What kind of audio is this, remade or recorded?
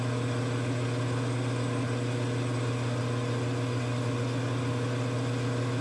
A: recorded